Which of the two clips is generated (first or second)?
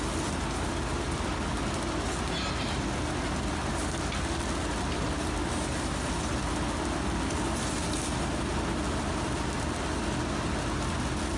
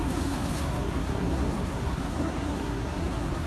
second